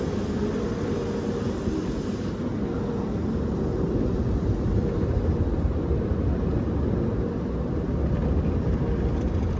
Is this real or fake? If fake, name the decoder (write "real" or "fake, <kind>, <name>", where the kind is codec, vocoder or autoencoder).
real